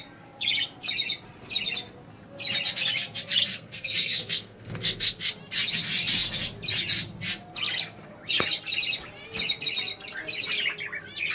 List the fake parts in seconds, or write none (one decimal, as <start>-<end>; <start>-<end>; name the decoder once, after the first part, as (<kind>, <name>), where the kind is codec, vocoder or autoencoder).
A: 3.5-5.3 (codec, SNAC)